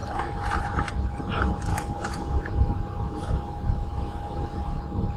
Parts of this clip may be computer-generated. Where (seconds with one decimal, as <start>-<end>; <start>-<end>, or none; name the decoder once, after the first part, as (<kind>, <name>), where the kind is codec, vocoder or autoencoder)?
1.7-4.8 (autoencoder, DAC-VAE)